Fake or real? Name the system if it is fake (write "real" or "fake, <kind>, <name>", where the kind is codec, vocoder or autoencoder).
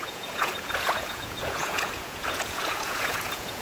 fake, vocoder, Vocos